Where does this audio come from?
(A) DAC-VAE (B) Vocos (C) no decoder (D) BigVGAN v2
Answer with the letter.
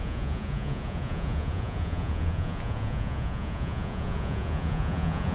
B